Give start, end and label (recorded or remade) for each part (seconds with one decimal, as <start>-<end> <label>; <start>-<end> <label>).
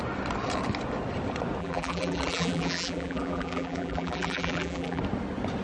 0.0-1.6 recorded; 1.6-5.0 remade; 5.0-5.6 recorded